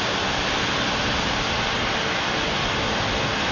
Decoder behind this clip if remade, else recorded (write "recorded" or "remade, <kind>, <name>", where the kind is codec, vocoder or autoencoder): recorded